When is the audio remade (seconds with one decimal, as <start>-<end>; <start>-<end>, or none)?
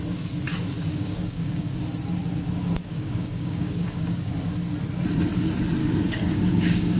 0.9-1.8; 2.9-4.3; 5.8-7.0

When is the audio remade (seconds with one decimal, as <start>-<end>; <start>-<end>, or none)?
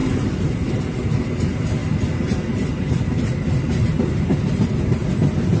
none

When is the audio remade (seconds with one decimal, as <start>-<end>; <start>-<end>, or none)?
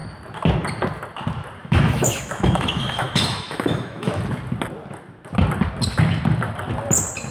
1.6-4.2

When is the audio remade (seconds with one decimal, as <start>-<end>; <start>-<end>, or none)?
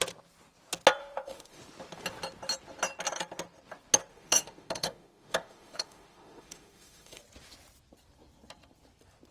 1.0-1.6; 4.1-7.2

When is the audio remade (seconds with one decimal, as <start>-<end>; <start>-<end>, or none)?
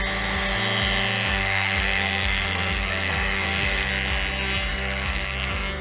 1.3-3.9; 4.7-5.8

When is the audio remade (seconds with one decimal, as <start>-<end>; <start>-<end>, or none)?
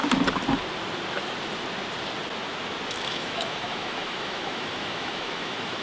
2.9-5.8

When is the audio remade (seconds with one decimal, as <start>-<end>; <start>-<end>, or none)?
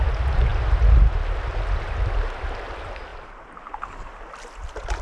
none